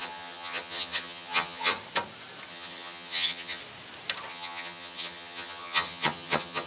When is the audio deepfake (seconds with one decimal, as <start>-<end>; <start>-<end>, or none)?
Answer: 0.0-1.7; 2.5-3.6; 4.3-6.7